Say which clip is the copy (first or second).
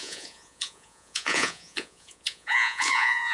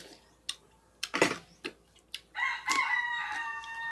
first